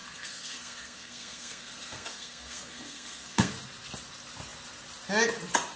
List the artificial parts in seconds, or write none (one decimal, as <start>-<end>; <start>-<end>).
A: 0.0-3.5